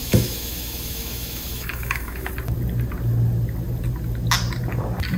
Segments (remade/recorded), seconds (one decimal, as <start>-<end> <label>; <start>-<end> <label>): 0.0-2.3 remade; 2.3-5.2 recorded